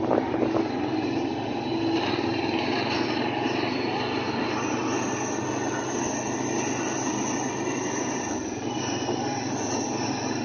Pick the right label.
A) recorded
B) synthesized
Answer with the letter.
A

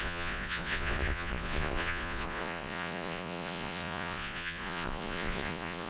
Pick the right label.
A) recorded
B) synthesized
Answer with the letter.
B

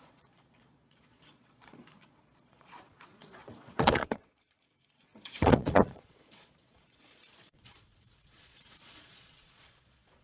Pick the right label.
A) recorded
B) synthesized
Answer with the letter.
B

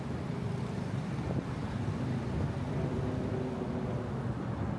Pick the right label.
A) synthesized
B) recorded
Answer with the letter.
B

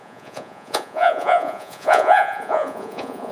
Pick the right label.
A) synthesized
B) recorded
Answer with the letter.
A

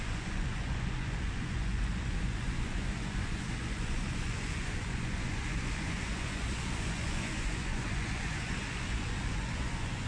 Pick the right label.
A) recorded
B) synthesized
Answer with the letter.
B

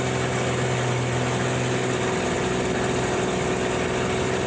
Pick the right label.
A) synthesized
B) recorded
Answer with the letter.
B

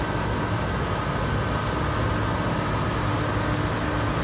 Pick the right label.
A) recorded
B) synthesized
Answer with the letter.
A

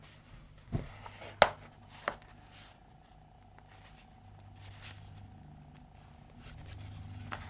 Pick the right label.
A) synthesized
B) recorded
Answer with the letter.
B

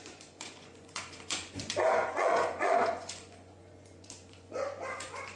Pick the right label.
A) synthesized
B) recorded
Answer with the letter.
A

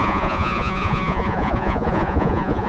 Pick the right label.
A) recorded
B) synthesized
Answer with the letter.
B